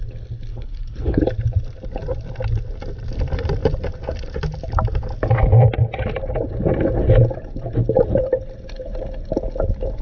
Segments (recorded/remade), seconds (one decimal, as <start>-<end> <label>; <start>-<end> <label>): 0.0-0.5 recorded; 0.5-1.2 remade; 1.2-10.0 recorded